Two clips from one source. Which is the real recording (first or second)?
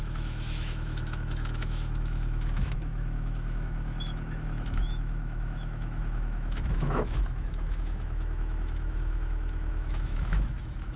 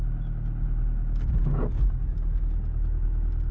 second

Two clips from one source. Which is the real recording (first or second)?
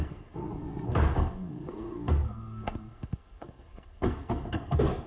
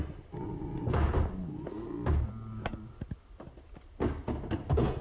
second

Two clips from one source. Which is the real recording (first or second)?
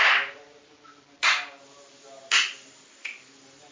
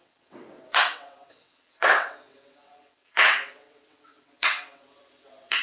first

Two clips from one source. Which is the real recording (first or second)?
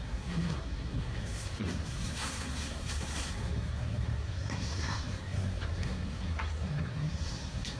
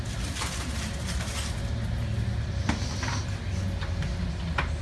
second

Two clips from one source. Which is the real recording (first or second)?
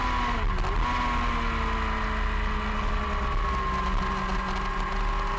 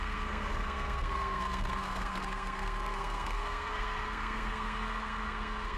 first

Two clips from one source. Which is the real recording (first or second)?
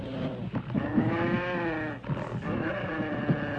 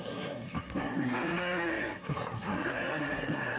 first